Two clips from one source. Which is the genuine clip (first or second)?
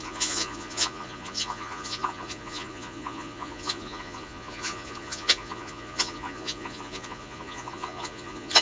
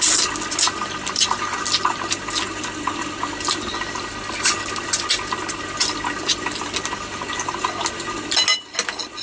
second